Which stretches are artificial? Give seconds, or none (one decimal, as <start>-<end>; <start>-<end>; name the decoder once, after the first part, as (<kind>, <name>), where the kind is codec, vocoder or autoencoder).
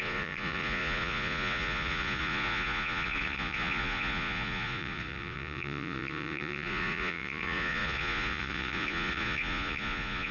0.0-10.3 (vocoder, Vocos)